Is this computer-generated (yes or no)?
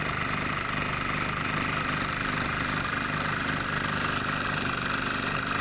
no